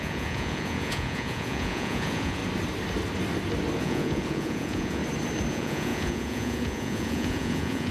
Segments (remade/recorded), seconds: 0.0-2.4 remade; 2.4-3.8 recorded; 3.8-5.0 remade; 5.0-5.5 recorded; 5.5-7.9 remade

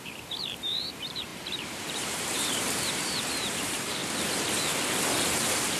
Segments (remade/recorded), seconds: 0.0-4.0 remade; 4.0-5.8 recorded

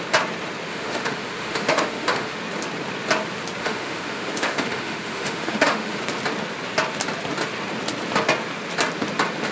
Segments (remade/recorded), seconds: 0.0-0.7 recorded; 0.7-2.4 remade; 2.4-3.6 recorded; 3.6-6.0 remade; 6.0-9.5 recorded

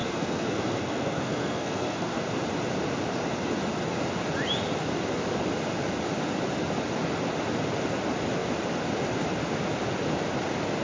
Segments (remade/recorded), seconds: 0.0-2.2 remade; 2.2-10.8 recorded